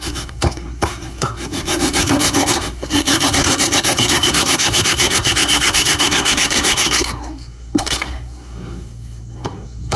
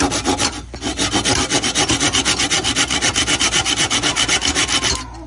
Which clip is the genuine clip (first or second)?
second